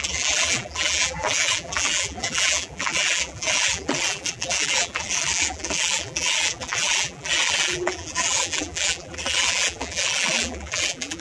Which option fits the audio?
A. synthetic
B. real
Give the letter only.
A